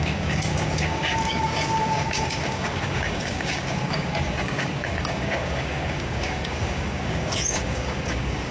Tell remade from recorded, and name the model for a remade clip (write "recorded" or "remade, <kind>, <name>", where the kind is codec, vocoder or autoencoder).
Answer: remade, codec, DAC